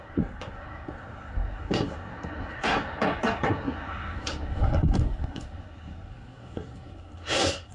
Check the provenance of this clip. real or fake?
fake